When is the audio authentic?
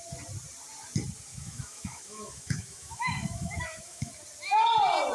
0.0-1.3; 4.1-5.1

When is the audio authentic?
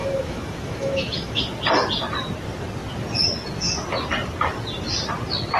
1.4-5.6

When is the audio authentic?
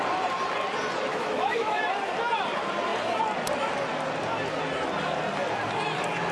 0.0-1.1; 1.8-6.3